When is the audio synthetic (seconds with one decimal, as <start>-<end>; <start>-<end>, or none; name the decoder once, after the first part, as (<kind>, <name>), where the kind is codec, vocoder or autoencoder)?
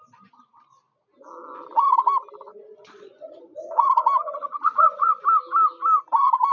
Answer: 2.4-3.8 (vocoder, Vocos); 4.2-5.2